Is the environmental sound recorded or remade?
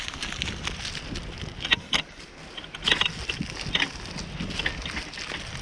recorded